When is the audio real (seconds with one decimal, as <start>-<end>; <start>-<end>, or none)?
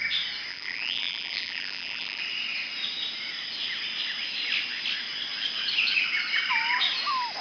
0.0-0.5; 2.2-7.4